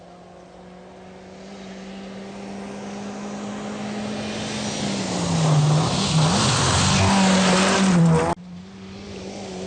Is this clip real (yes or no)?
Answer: yes